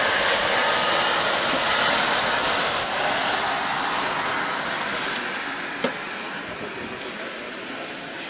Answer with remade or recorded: recorded